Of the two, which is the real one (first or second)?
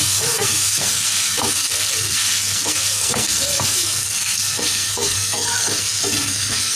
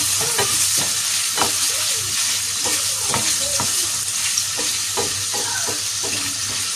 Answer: second